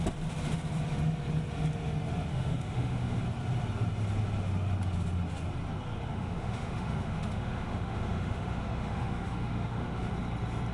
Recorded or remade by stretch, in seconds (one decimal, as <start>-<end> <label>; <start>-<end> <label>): 0.0-2.3 recorded; 2.3-3.2 remade; 3.2-6.1 recorded; 6.1-10.1 remade; 10.1-10.7 recorded